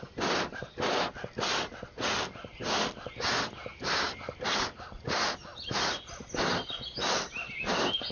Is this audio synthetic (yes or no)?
no